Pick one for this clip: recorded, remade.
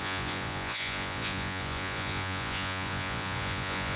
remade